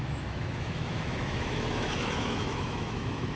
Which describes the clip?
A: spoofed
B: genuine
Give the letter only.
A